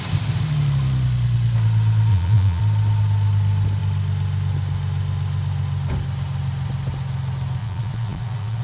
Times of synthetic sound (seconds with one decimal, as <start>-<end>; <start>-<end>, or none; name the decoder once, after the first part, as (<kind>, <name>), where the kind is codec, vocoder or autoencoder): 2.1-2.6 (vocoder, Vocos); 7.6-8.6